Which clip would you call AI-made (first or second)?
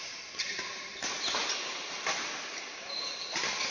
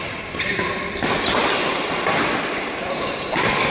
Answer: first